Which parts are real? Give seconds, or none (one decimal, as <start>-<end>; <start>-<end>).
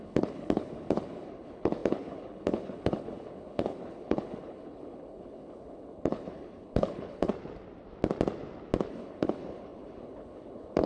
7.3-8.9